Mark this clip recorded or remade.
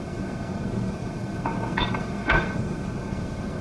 remade